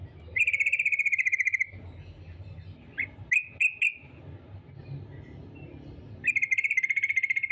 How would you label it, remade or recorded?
recorded